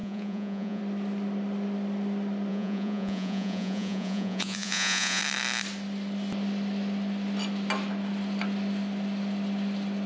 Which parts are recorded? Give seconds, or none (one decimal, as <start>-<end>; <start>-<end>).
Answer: 0.8-2.5; 5.2-10.1